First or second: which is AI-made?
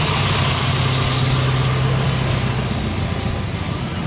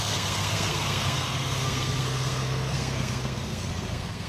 second